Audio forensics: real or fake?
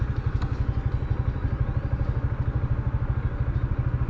real